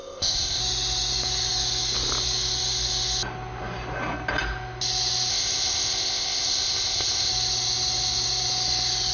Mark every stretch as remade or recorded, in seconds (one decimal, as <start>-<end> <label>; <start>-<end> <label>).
0.0-0.6 remade; 0.6-5.3 recorded; 5.3-7.3 remade; 7.3-9.1 recorded